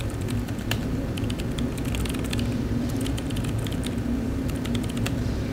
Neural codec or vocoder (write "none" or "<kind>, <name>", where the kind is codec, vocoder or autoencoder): vocoder, BigVGAN v2